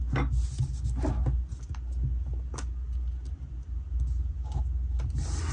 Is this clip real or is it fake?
real